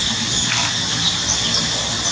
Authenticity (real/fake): real